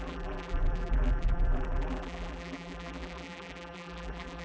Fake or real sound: fake